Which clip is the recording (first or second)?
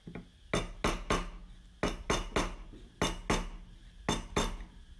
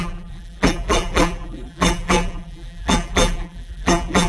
first